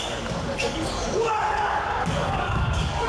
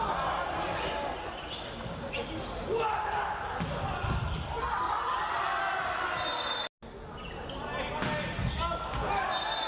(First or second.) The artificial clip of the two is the first